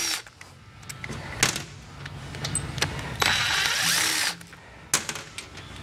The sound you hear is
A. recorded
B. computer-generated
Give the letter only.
A